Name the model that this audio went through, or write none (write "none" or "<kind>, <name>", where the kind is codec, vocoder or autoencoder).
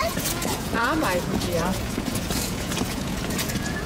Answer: vocoder, Vocos